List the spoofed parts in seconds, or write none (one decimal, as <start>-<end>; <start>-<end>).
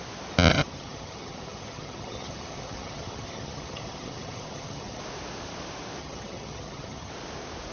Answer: 0.5-5.0; 6.0-7.1